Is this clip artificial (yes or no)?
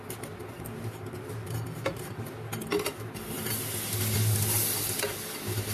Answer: no